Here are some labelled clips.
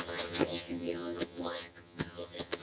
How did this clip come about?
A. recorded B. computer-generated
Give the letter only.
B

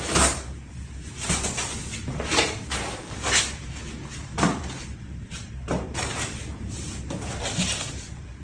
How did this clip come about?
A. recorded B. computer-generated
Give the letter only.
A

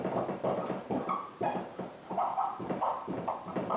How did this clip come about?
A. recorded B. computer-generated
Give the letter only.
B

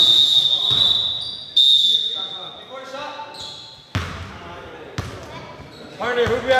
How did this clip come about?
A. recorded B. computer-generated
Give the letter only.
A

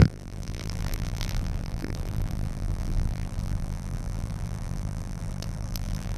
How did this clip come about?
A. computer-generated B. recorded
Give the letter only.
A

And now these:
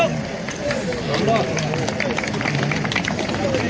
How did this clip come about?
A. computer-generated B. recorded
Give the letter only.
B